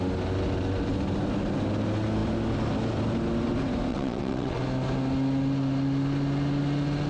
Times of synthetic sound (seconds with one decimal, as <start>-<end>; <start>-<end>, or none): 3.9-4.6